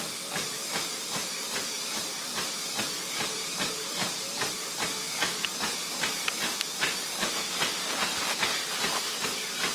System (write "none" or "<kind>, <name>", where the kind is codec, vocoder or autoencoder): none